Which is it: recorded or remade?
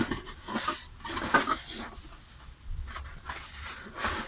recorded